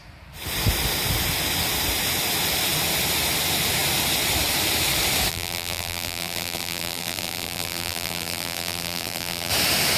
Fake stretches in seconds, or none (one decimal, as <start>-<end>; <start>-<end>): 5.3-9.5